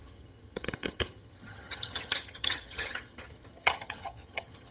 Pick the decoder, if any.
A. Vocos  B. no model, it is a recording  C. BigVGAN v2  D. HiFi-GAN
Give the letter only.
D